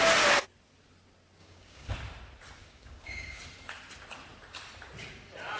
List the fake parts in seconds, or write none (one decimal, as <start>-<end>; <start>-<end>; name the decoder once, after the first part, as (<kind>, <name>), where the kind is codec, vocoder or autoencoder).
1.4-1.9 (codec, DAC); 2.6-3.4